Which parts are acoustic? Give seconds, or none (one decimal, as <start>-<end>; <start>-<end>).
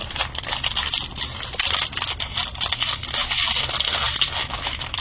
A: 0.0-4.4